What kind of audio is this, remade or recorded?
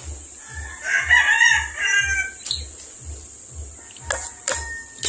recorded